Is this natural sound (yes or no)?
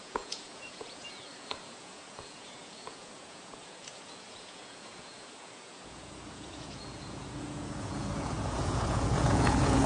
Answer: no